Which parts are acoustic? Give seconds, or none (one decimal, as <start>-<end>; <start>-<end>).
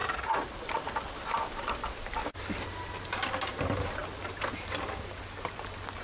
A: 0.5-6.0